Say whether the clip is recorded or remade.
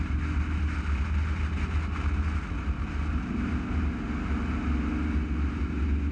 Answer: recorded